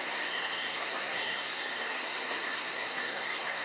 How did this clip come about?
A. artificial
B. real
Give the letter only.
A